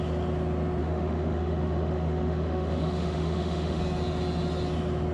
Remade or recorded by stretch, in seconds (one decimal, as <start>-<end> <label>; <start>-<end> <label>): 0.0-0.8 recorded; 0.8-3.8 remade; 3.8-5.1 recorded